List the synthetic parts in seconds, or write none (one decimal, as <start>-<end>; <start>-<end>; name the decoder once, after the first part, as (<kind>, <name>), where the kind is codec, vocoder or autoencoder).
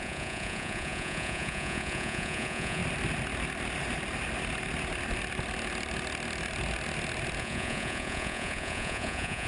0.0-2.8 (vocoder, Vocos); 7.4-9.5